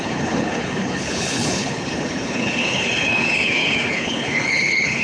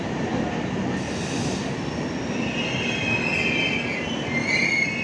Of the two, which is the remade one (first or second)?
first